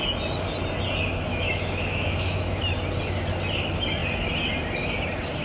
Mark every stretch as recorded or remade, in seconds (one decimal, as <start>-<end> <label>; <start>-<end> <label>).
0.0-1.3 recorded; 1.3-2.6 remade; 2.6-5.4 recorded